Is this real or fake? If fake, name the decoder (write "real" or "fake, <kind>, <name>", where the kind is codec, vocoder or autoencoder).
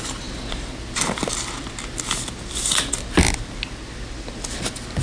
real